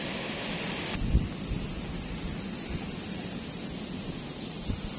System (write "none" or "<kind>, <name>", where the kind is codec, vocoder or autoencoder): none